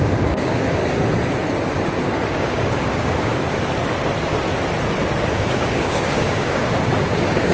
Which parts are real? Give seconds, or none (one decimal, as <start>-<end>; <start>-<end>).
0.8-2.3; 3.3-5.3